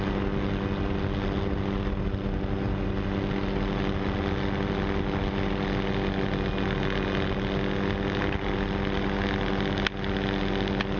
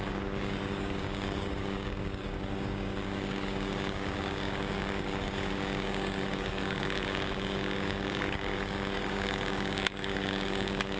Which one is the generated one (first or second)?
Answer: second